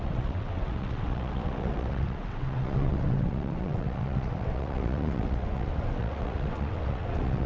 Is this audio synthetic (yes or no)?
yes